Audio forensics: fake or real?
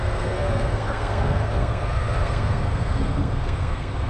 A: fake